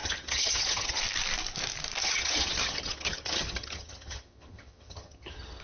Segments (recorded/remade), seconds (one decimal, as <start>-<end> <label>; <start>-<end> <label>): 0.0-1.0 remade; 1.0-2.0 recorded; 2.0-5.6 remade